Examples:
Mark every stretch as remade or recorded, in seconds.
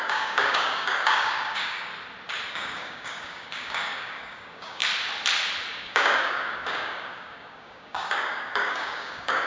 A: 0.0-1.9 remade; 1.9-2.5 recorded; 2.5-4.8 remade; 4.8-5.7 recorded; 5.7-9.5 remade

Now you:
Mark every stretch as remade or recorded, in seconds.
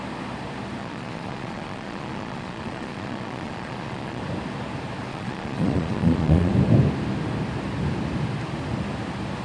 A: 0.0-0.8 recorded; 0.8-4.2 remade; 4.2-5.1 recorded; 5.1-6.5 remade; 6.5-9.4 recorded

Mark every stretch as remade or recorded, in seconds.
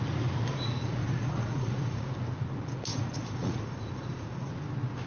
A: 0.0-0.5 recorded; 0.5-2.1 remade; 2.1-2.9 recorded; 2.9-4.5 remade; 4.5-5.1 recorded